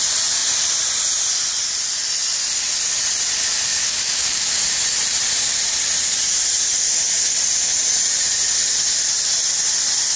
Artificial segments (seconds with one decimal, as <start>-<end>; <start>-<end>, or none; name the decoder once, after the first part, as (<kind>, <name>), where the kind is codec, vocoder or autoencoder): 3.7-4.5 (codec, DAC)